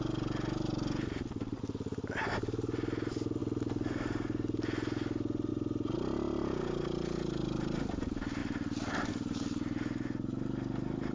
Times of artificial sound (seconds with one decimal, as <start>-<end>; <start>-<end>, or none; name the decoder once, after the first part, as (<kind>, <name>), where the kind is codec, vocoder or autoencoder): none